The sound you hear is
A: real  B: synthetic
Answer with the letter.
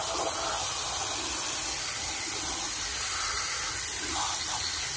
A